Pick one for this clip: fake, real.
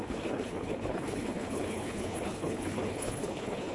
fake